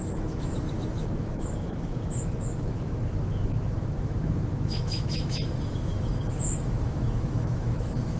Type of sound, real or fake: fake